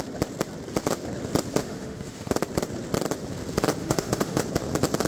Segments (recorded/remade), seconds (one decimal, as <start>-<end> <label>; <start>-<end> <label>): 0.0-1.6 recorded; 1.6-2.4 remade; 2.4-3.8 recorded; 3.8-4.4 remade; 4.4-5.1 recorded